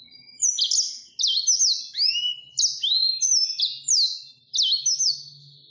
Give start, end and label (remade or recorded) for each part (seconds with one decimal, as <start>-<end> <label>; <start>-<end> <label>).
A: 0.0-5.7 recorded